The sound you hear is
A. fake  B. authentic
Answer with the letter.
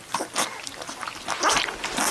B